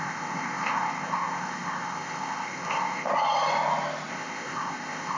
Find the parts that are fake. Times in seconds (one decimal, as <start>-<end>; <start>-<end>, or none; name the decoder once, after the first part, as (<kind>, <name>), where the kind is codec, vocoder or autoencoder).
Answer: 0.0-3.1 (codec, ZipCodec); 4.1-5.2